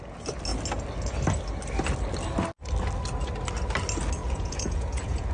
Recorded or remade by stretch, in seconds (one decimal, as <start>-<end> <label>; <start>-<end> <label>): 0.0-4.2 recorded; 4.2-5.3 remade